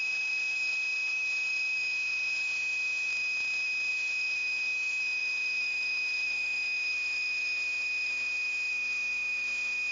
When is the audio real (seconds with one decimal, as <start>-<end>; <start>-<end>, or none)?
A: 3.1-3.9